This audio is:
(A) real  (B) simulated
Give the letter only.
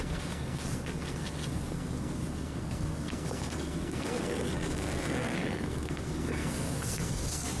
B